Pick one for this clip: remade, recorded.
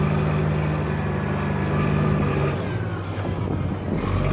recorded